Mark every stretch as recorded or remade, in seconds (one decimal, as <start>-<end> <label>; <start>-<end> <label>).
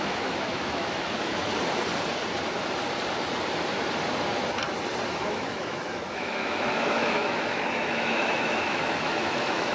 0.0-1.5 remade; 1.5-5.1 recorded; 5.1-9.7 remade